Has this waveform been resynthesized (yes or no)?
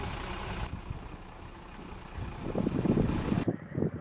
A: no